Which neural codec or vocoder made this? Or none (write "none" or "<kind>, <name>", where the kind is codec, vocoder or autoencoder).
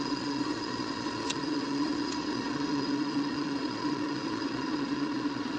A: vocoder, Vocos